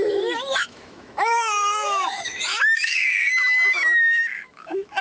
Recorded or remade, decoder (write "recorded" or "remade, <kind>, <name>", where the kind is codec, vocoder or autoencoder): remade, autoencoder, DAC-VAE